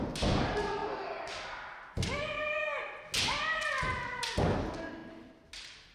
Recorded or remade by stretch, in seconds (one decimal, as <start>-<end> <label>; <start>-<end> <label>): 0.0-5.9 recorded